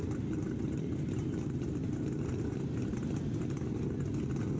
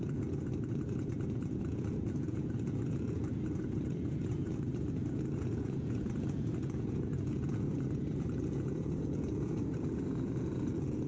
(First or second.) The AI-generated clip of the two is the second